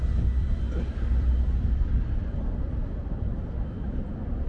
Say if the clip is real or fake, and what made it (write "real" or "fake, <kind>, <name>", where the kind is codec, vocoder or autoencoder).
fake, vocoder, BigVGAN v2